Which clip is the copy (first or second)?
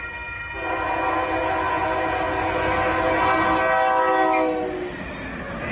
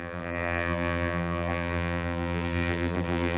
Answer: second